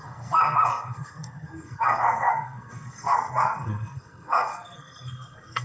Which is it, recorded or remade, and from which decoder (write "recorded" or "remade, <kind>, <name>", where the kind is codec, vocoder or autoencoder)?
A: remade, codec, SNAC